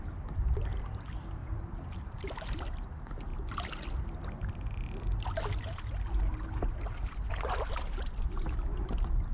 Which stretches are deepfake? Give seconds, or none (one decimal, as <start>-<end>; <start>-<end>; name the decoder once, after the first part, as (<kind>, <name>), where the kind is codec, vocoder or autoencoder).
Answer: 1.4-2.6 (vocoder, BigVGAN v2)